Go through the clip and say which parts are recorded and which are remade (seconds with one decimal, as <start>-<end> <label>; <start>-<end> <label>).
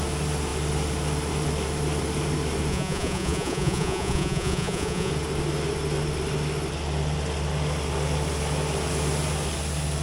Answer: 0.0-2.7 recorded; 2.7-5.1 remade; 5.1-10.0 recorded